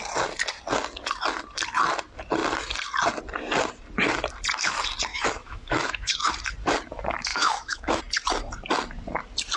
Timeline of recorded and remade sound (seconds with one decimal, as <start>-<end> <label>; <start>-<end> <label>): 0.0-5.1 recorded; 5.1-6.3 remade; 6.3-7.3 recorded; 7.3-8.0 remade; 8.0-9.6 recorded